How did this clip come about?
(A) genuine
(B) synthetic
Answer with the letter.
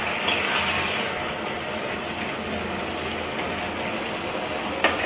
A